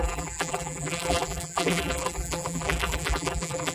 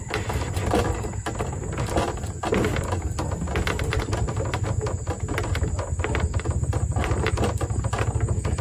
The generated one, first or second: first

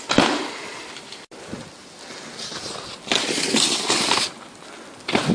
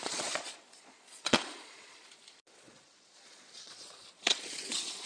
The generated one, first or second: second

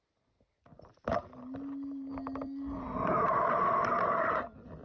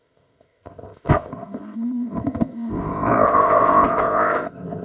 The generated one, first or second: second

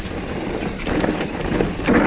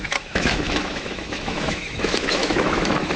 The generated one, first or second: second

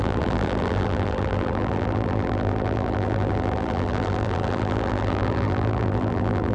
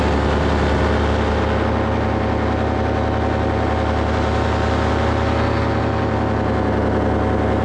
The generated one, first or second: first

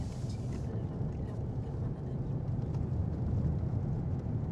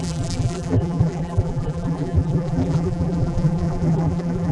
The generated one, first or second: second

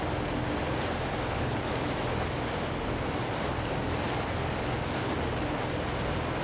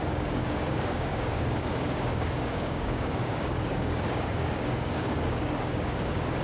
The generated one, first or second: second